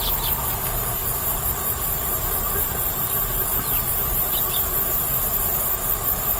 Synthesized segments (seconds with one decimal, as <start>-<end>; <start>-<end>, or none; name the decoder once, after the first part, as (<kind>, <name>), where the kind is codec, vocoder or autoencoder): 1.0-4.8 (vocoder, BigVGAN v2)